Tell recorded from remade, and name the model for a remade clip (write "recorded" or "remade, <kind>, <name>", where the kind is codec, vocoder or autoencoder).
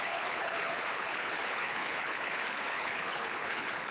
remade, codec, HILCodec